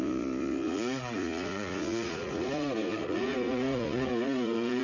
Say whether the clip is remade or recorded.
remade